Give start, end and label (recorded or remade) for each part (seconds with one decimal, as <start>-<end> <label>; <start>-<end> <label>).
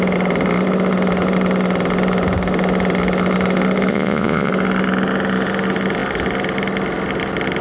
0.0-3.9 recorded; 3.9-4.5 remade; 4.5-7.6 recorded